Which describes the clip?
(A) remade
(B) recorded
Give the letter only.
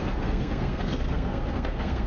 A